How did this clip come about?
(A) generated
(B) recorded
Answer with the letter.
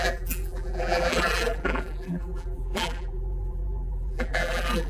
A